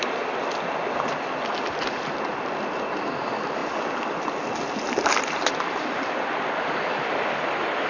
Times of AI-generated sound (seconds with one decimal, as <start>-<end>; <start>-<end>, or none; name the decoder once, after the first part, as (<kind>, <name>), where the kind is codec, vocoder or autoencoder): none